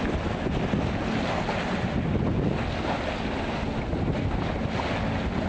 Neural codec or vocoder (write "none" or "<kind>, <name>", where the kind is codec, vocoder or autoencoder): none